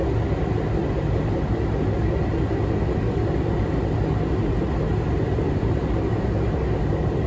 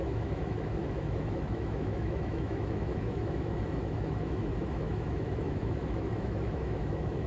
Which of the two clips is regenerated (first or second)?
second